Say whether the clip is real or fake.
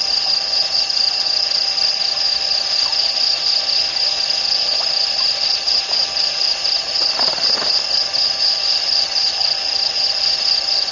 real